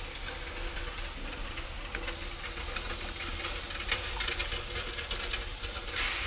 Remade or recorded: recorded